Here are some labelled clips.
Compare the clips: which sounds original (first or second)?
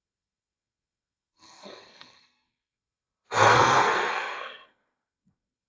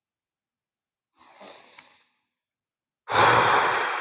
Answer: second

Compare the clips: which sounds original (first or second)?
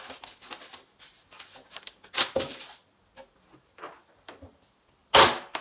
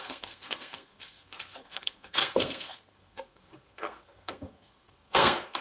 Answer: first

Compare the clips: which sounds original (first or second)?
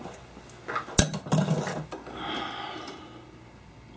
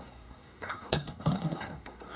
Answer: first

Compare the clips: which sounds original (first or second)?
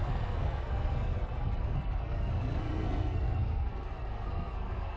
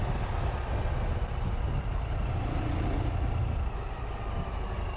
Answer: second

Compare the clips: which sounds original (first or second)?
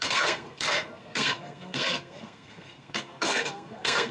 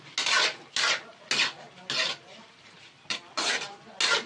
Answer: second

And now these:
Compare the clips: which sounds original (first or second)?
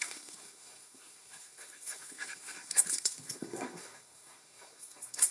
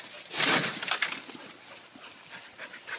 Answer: second